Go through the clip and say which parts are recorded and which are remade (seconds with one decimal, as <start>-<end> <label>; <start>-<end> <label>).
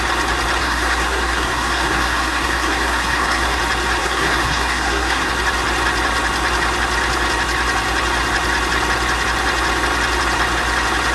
0.0-0.6 recorded; 0.6-3.6 remade; 3.6-4.0 recorded; 4.0-5.3 remade; 5.3-11.1 recorded